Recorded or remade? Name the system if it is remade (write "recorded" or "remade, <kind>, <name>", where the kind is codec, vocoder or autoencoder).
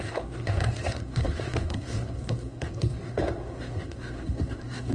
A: remade, codec, SNAC